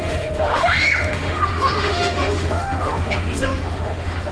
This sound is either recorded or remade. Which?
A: remade